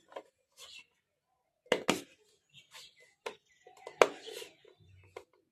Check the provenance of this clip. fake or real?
real